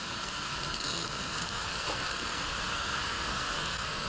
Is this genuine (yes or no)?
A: no